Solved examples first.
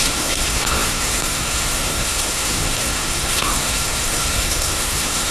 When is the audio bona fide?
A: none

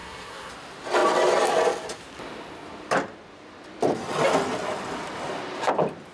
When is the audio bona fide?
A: 0.5-6.1

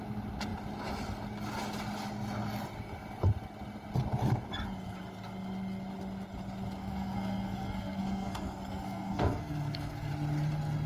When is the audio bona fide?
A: 0.0-6.8; 10.1-10.9

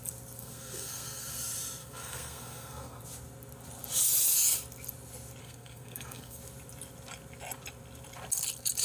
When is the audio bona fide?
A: 0.0-0.4; 1.4-1.8; 3.0-5.4; 6.4-8.8

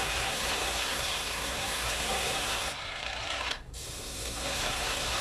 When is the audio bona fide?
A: none

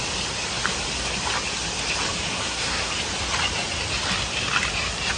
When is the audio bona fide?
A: 0.0-2.3; 2.9-5.2